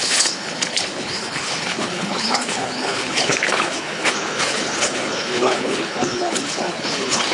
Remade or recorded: remade